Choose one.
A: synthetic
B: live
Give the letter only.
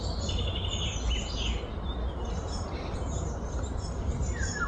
B